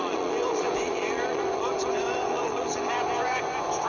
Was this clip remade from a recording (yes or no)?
yes